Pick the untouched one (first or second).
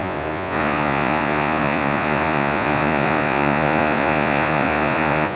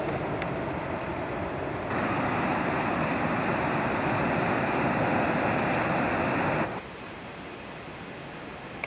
second